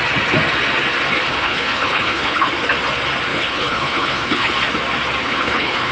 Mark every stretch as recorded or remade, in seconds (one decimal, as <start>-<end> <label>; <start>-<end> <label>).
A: 0.0-1.3 recorded; 1.3-2.5 remade; 2.5-3.3 recorded; 3.3-4.5 remade; 4.5-5.2 recorded; 5.2-5.9 remade